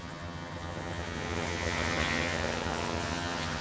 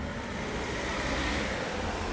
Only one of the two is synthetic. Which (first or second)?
first